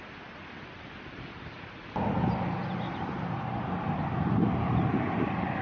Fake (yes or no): no